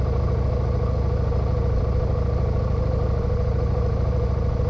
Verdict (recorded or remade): recorded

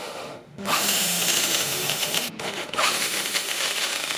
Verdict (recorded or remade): remade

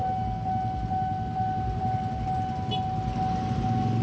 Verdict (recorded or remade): recorded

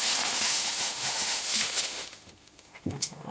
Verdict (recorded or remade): remade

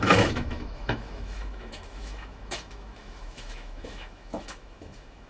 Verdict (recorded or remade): remade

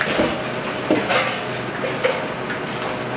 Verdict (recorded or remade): recorded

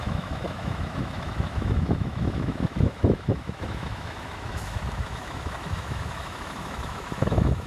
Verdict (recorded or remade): remade